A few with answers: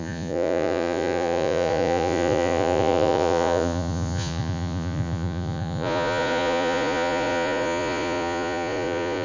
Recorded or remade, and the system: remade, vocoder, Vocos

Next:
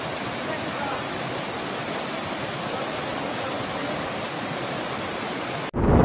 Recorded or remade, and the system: recorded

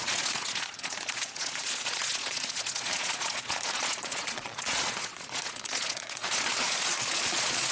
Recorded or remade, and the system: remade, vocoder, Vocos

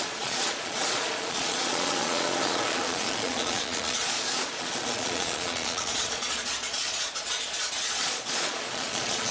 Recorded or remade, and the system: remade, vocoder, Vocos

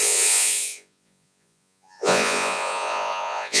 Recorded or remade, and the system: remade, vocoder, Vocos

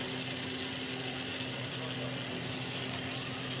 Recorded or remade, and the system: recorded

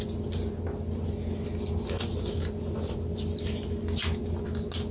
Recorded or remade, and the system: recorded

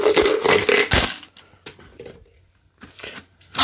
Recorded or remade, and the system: recorded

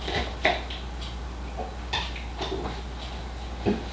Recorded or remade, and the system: recorded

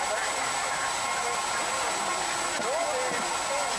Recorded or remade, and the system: recorded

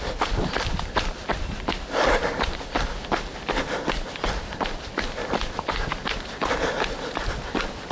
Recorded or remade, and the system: recorded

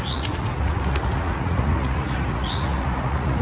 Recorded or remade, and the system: remade, vocoder, Vocos